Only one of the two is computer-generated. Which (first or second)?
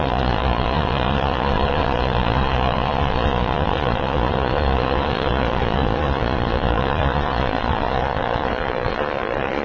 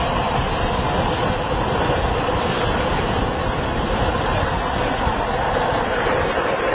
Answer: first